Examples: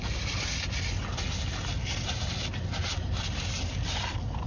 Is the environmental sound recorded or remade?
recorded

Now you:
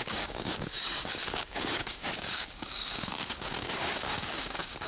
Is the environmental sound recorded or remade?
remade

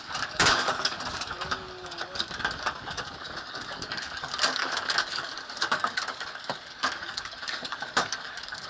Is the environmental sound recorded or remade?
remade